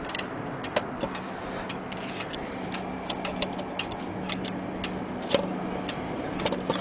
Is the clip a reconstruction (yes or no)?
no